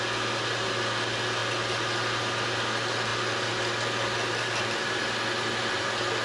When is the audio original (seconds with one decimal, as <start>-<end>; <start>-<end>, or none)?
0.0-6.2